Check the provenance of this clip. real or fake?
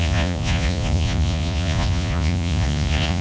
fake